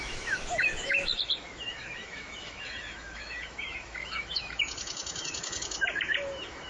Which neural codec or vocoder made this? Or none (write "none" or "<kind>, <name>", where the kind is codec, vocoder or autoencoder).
autoencoder, DAC-VAE